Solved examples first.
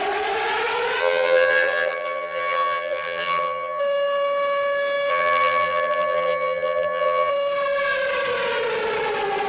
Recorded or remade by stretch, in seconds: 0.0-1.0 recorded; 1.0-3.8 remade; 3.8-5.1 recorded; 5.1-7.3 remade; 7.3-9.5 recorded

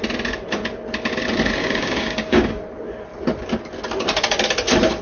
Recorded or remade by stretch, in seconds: 0.0-1.6 recorded; 1.6-2.5 remade; 2.5-5.0 recorded

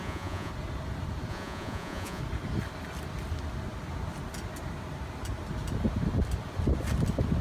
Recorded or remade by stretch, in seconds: 0.0-0.5 remade; 0.5-1.3 recorded; 1.3-2.2 remade; 2.2-7.4 recorded

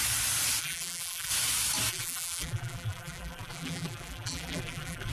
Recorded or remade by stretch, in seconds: 0.0-0.6 recorded; 0.6-1.3 remade; 1.3-1.9 recorded; 1.9-5.1 remade

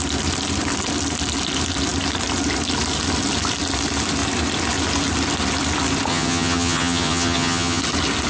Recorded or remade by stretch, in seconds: 0.0-6.1 recorded; 6.1-7.8 remade; 7.8-8.3 recorded

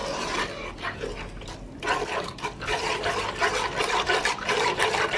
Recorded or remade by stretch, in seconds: 0.0-5.2 recorded